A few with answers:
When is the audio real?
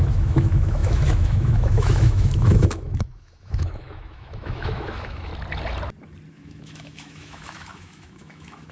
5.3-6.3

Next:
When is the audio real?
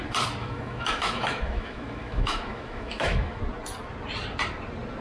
0.0-0.4; 3.4-5.0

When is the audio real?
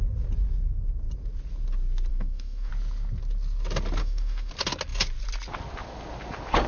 0.0-2.1; 2.7-4.0; 4.5-6.7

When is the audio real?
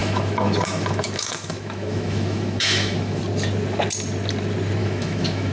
3.2-4.8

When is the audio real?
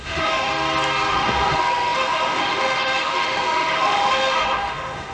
0.5-1.1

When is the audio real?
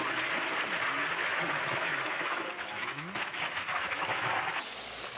0.0-1.2; 4.3-5.2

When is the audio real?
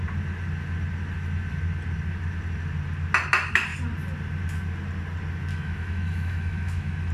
0.0-5.5